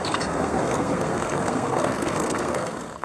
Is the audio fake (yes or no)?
yes